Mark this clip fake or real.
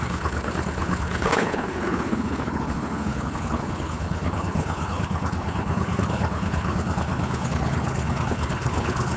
fake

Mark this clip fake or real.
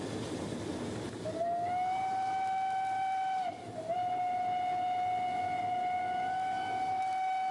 real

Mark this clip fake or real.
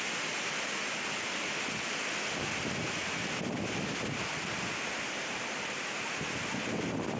real